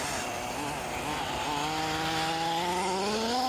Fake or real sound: real